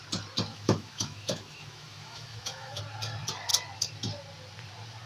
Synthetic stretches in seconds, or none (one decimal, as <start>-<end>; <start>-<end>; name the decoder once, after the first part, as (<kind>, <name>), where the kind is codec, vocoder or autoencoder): 0.5-2.8 (autoencoder, DAC-VAE)

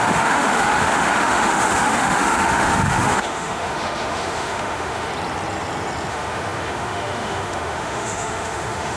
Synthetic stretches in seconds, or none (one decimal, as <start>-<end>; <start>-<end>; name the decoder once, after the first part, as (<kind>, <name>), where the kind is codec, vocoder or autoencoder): 0.0-5.1 (autoencoder, DAC-VAE); 6.1-9.0

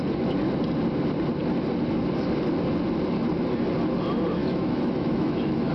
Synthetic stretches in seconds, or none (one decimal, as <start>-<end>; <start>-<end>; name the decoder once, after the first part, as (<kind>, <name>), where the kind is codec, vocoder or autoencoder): 4.4-5.7 (autoencoder, DAC-VAE)

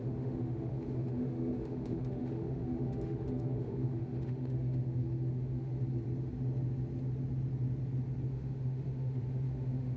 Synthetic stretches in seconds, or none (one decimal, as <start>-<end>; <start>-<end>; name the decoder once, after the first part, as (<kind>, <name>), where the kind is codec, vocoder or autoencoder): 0.0-5.7 (autoencoder, DAC-VAE); 8.3-10.0

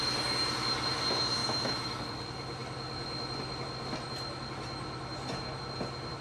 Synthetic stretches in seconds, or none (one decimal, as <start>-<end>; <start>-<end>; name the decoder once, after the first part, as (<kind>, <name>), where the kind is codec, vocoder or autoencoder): 1.4-2.0 (autoencoder, DAC-VAE)